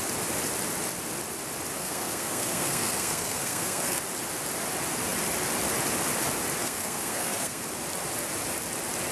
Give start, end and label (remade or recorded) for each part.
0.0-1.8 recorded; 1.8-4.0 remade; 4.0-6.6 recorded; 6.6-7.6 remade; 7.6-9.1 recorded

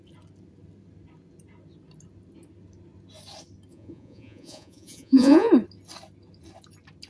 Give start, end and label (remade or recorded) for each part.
0.0-3.7 recorded; 3.7-5.5 remade; 5.5-7.1 recorded

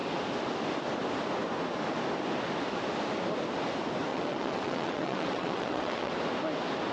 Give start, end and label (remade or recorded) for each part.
0.0-4.1 recorded; 4.1-6.1 remade; 6.1-6.9 recorded

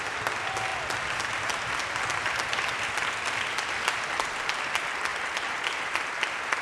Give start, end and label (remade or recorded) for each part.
0.0-6.6 recorded

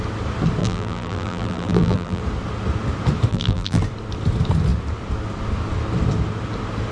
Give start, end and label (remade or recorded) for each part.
0.0-0.6 recorded; 0.6-2.2 remade; 2.2-3.3 recorded; 3.3-3.8 remade; 3.8-6.9 recorded